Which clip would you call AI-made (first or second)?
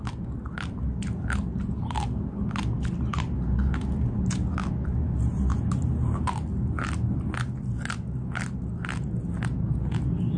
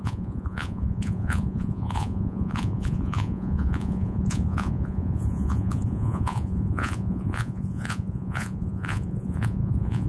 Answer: second